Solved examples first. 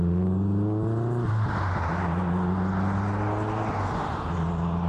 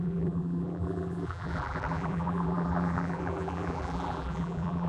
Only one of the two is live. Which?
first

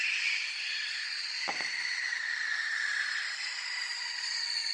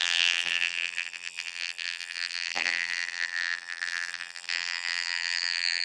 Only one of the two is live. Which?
first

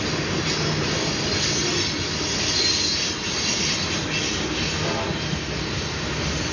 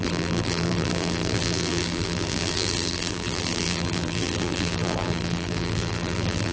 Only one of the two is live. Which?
first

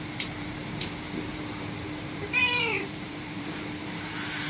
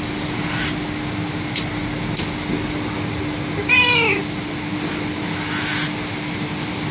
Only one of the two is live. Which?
second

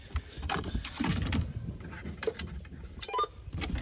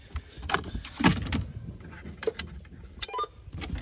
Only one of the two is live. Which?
second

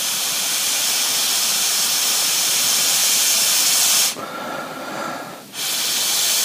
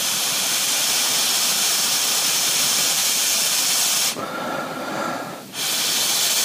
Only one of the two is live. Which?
first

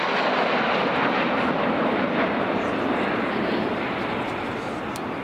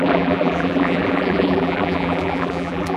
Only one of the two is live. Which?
first